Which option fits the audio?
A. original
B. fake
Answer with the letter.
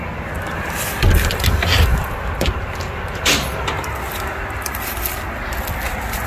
A